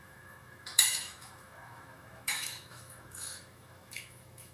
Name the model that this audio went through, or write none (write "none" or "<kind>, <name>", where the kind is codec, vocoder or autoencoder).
autoencoder, DAC-VAE